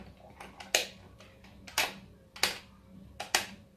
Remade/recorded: recorded